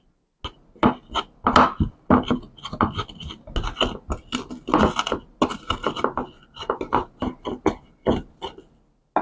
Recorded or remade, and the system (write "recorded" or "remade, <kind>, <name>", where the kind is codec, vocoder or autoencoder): recorded